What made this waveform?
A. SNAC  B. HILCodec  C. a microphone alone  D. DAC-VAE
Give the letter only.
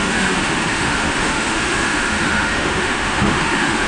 D